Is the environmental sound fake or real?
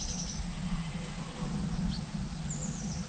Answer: real